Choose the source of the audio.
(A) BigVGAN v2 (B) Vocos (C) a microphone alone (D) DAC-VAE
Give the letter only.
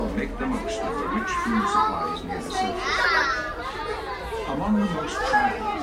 C